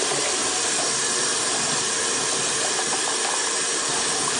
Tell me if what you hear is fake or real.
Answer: real